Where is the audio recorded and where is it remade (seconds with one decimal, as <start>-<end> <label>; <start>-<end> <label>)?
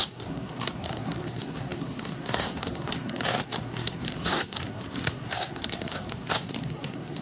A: 0.0-7.2 remade